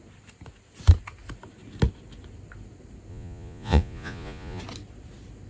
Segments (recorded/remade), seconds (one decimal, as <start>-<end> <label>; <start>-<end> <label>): 0.0-3.1 recorded; 3.1-4.6 remade; 4.6-5.5 recorded